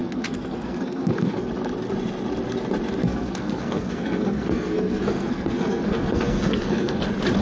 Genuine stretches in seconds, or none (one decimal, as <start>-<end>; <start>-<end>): 1.5-3.0; 7.0-7.4